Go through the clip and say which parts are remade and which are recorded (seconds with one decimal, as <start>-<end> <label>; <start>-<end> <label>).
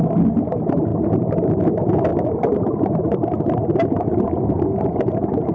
0.0-0.9 recorded; 0.9-1.6 remade; 1.6-5.5 recorded